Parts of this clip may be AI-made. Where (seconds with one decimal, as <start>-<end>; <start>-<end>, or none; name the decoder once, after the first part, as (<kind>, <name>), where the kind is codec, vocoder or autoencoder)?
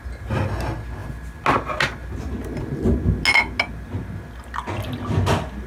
none